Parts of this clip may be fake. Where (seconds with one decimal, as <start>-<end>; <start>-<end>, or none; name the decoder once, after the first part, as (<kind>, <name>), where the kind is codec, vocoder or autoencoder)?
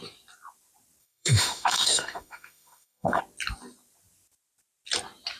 1.0-3.2 (autoencoder, DAC-VAE)